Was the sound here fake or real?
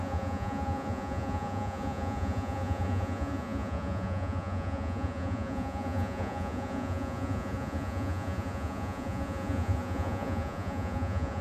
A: fake